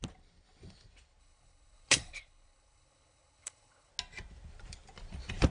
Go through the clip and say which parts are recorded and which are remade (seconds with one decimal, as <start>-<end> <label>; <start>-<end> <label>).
0.0-1.2 recorded; 1.2-3.9 remade; 3.9-5.5 recorded